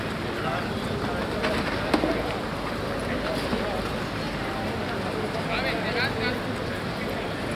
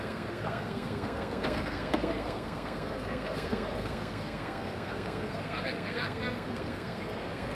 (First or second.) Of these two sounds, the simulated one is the second